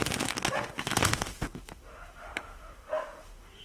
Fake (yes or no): yes